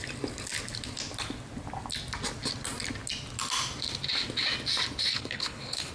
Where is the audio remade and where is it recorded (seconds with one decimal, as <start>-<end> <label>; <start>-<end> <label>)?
0.0-5.1 recorded; 5.1-5.9 remade